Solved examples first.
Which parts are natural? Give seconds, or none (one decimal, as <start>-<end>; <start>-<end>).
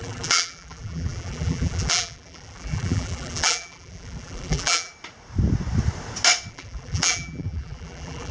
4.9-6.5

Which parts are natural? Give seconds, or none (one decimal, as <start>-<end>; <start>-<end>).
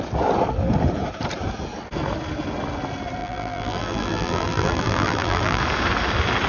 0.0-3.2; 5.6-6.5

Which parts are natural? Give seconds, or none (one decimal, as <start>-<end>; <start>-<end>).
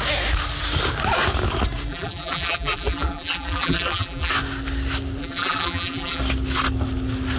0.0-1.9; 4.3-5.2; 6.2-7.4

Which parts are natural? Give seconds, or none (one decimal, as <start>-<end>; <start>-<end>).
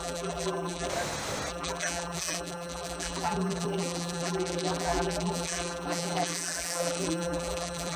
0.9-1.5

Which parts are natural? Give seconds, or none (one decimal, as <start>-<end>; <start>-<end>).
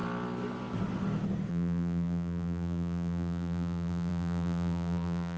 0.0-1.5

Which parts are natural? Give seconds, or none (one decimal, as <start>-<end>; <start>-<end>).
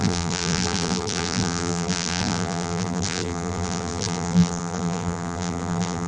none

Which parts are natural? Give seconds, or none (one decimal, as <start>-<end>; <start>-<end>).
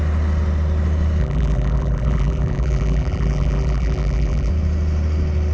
0.0-1.2; 4.5-5.5